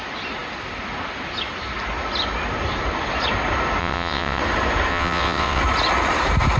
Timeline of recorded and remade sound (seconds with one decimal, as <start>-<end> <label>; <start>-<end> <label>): 0.0-3.8 recorded; 3.8-4.4 remade; 4.4-4.9 recorded; 4.9-5.6 remade; 5.6-6.6 recorded